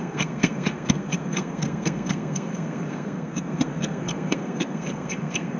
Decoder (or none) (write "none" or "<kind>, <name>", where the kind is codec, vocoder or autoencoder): codec, SNAC